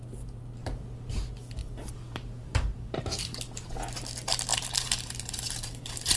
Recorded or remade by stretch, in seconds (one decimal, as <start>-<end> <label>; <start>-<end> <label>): 0.0-1.6 recorded; 1.6-3.2 remade; 3.2-4.5 recorded; 4.5-6.2 remade